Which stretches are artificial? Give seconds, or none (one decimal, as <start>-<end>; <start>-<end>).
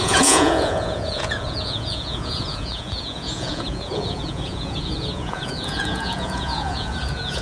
0.0-7.4